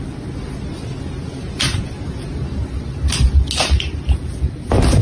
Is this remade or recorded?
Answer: recorded